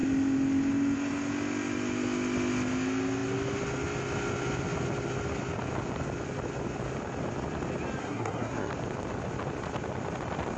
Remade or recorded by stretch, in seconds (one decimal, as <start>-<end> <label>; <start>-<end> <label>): 0.0-8.0 recorded; 8.0-8.7 remade; 8.7-10.6 recorded